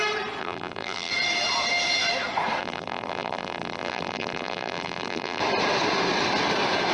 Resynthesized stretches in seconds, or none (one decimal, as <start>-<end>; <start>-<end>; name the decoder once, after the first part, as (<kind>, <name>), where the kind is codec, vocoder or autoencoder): 0.4-1.1 (vocoder, BigVGAN v2); 2.6-5.4